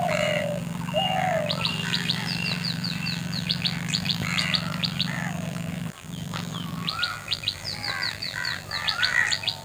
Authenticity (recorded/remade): remade